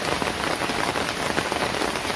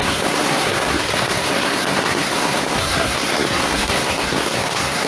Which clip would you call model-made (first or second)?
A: second